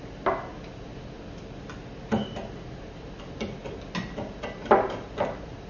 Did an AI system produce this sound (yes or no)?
no